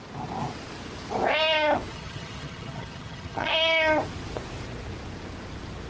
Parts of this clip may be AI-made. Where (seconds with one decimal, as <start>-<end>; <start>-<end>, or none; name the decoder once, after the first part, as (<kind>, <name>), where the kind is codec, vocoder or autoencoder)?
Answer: 1.9-3.5 (vocoder, HiFi-GAN)